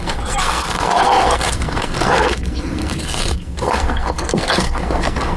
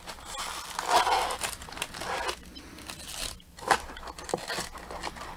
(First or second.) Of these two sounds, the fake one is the first